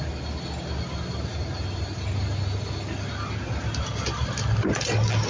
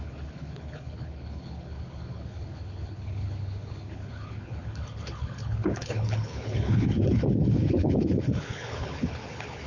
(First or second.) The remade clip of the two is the second